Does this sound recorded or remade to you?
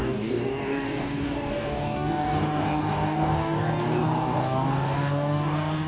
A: remade